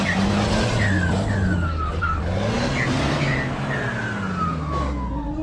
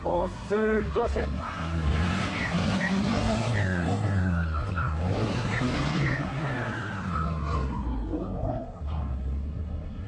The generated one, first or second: second